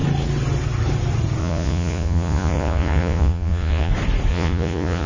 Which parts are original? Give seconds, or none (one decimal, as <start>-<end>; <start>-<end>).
0.0-1.4; 3.9-4.3